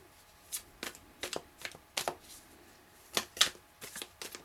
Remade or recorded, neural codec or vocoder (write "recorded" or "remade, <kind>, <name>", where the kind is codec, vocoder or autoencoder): recorded